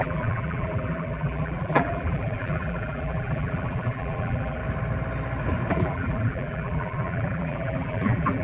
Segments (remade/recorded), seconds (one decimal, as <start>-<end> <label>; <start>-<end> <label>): 0.0-4.6 remade; 4.6-5.7 recorded; 5.7-8.4 remade